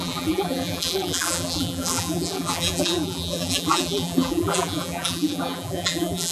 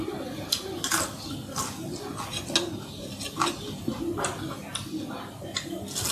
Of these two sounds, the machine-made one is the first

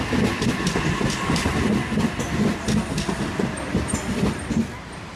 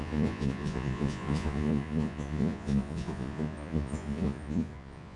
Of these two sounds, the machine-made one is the second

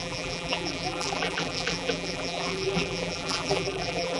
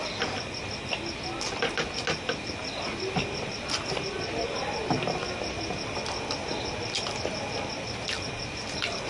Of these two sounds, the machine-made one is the first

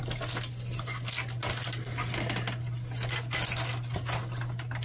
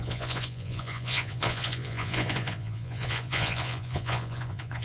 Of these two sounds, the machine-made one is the second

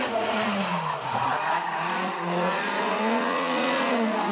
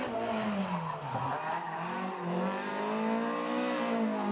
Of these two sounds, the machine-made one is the first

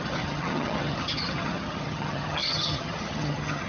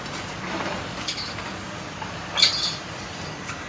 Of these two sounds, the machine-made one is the first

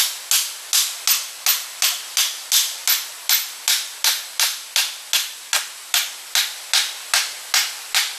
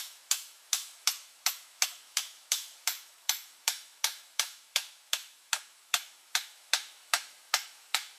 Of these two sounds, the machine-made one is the second